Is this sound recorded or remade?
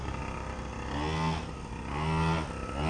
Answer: recorded